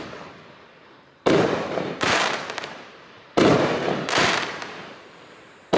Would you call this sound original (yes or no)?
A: no